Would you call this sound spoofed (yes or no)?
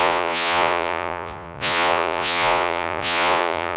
yes